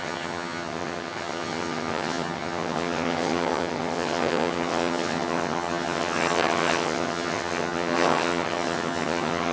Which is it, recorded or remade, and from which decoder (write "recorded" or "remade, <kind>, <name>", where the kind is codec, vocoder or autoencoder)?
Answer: remade, vocoder, HiFi-GAN